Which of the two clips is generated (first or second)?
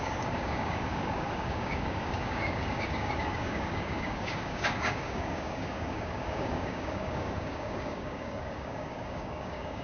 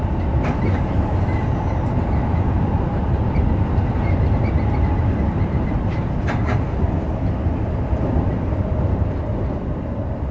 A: first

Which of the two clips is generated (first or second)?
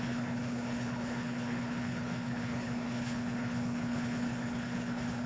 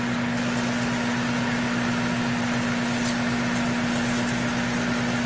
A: first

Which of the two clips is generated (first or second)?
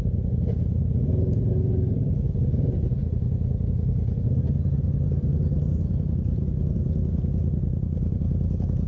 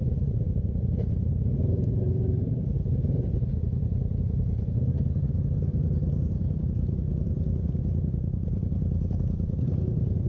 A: second